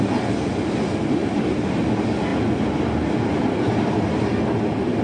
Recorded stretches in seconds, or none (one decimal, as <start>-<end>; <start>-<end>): 0.0-1.2; 1.9-5.0